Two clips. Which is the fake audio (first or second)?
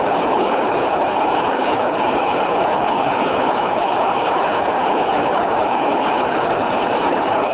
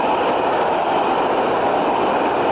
first